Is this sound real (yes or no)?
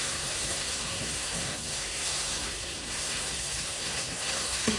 no